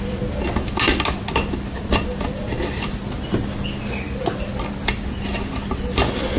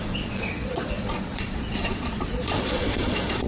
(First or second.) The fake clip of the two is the second